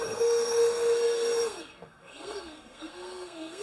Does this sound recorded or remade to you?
remade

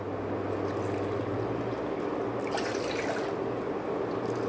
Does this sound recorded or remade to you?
recorded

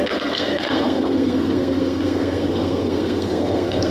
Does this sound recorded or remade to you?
remade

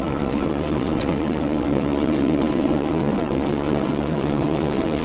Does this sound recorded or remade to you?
remade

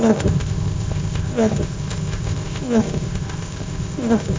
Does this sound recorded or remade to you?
remade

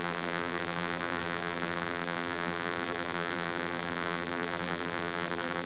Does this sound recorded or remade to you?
remade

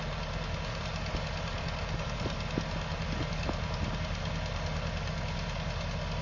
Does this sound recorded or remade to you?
recorded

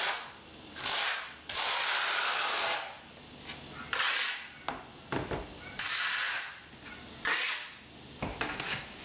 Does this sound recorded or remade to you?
recorded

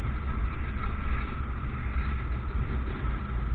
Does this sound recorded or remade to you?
recorded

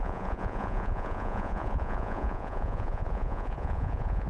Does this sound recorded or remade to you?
remade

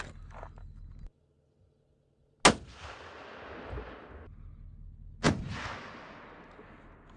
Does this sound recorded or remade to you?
recorded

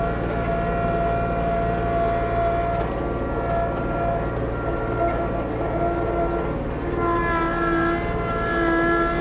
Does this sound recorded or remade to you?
recorded